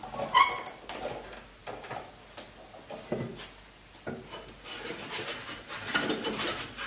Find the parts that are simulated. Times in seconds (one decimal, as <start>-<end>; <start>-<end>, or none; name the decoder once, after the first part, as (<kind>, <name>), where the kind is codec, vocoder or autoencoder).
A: none